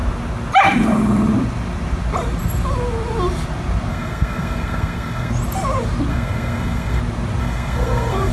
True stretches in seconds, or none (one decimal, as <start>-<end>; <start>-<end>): 0.0-3.9; 5.3-6.1; 7.0-7.4